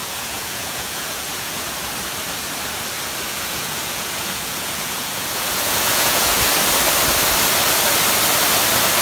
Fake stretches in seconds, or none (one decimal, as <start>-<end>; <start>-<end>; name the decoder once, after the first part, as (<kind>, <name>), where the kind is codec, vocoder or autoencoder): 0.0-1.7 (vocoder, Vocos); 3.3-6.4

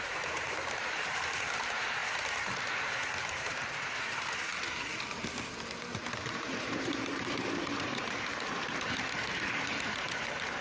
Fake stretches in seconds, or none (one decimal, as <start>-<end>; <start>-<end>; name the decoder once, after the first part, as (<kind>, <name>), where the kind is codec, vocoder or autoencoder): 0.0-2.0 (vocoder, BigVGAN v2); 3.4-4.5; 6.0-8.3; 9.5-10.6